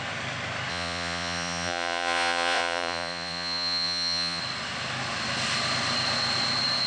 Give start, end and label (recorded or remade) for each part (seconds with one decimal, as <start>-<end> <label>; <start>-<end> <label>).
0.0-0.7 recorded; 0.7-4.4 remade; 4.4-6.9 recorded